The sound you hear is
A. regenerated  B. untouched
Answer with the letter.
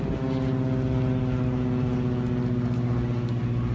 B